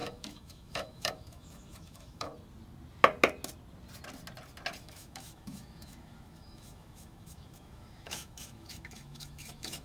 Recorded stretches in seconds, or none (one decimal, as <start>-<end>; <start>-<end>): 2.3-4.8